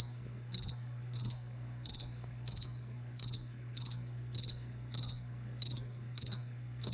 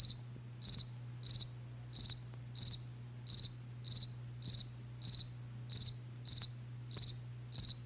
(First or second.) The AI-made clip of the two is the first